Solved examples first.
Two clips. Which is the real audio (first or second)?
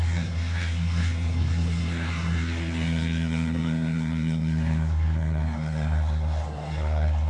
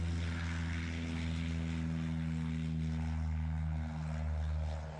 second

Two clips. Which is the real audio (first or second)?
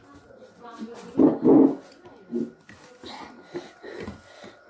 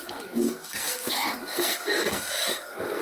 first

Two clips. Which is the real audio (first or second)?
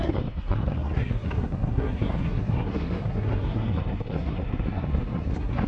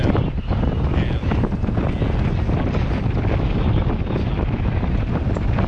second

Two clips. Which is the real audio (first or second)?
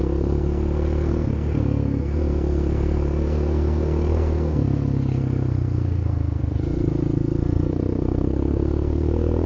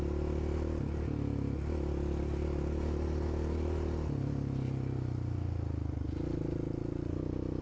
second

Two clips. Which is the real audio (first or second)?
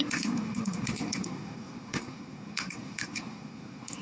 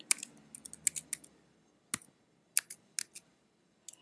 second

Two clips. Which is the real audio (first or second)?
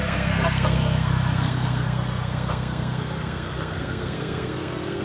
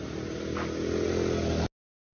second